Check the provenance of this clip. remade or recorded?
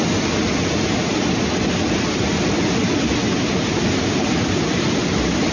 recorded